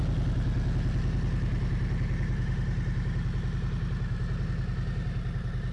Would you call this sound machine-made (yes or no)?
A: no